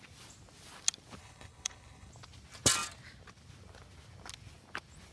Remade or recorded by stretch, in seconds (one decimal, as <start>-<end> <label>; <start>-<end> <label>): 0.0-1.2 recorded; 1.2-2.1 remade; 2.1-5.1 recorded